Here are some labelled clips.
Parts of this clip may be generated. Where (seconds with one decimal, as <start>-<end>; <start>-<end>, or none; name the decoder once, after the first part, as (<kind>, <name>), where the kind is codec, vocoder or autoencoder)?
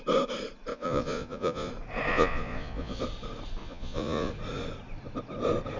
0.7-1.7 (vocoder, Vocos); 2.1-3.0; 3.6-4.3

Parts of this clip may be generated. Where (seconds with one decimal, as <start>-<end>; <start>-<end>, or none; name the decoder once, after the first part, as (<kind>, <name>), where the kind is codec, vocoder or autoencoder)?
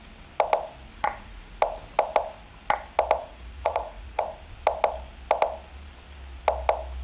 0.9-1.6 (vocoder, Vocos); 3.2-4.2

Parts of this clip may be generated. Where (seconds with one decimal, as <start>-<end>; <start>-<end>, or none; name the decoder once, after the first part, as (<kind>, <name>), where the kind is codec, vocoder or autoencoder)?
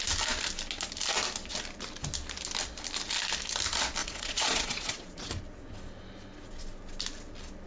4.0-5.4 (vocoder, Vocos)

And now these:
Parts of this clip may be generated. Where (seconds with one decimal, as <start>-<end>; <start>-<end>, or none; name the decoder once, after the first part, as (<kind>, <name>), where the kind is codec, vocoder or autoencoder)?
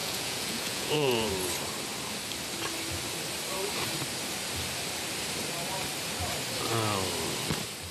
0.0-1.3 (vocoder, Vocos)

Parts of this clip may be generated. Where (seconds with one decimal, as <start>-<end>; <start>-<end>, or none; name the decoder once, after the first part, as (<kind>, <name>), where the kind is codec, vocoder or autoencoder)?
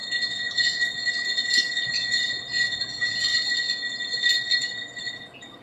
0.0-3.3 (vocoder, Vocos); 5.1-5.6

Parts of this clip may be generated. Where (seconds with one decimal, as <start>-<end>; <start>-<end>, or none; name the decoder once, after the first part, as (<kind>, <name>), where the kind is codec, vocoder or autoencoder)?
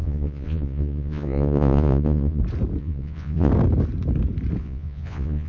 0.0-2.4 (vocoder, Vocos); 2.8-3.5; 4.6-5.5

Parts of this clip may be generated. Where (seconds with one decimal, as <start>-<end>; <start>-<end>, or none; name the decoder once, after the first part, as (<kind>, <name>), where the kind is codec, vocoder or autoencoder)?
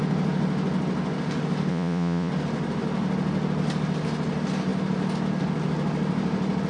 1.7-2.3 (vocoder, Vocos)